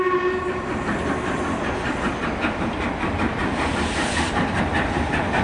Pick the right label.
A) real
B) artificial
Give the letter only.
A